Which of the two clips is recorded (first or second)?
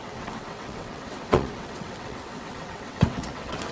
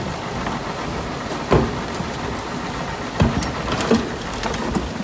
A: second